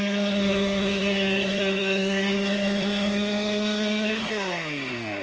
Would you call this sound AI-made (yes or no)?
yes